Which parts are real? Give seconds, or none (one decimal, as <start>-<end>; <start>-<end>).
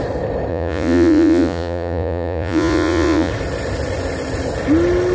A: 0.0-0.5; 3.3-5.1